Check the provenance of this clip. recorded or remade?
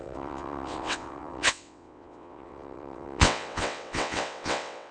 remade